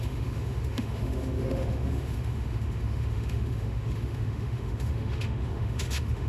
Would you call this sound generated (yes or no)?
yes